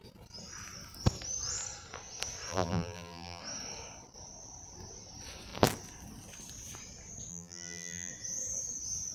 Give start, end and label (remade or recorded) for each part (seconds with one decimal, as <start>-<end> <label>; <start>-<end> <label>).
0.0-2.5 recorded; 2.5-3.4 remade; 3.4-7.3 recorded; 7.3-8.1 remade; 8.1-9.1 recorded